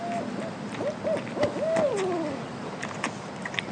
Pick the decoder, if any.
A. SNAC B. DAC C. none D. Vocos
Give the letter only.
C